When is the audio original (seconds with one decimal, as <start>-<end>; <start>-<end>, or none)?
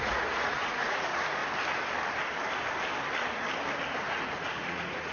1.4-4.0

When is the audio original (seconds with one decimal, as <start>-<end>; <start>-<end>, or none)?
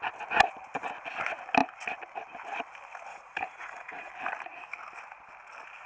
0.0-3.1; 4.1-5.9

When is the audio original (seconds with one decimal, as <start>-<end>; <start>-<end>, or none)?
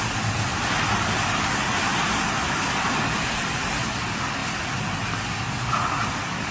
0.0-6.5